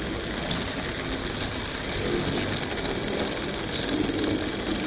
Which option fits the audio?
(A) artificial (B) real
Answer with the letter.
B